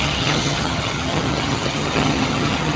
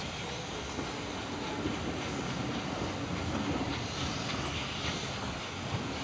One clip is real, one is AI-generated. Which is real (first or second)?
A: second